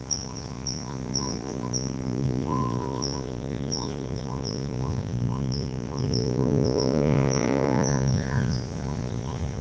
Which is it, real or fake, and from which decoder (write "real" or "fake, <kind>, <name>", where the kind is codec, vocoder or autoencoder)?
fake, vocoder, Vocos